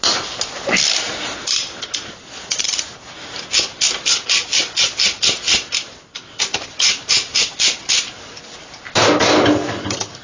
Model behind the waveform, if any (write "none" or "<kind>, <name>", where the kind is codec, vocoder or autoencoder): none